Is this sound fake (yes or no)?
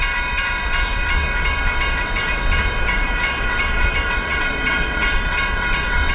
yes